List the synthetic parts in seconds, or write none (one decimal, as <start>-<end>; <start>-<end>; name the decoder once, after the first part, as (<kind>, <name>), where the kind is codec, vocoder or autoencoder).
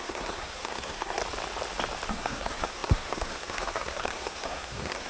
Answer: 0.0-1.2 (codec, SNAC); 2.1-5.1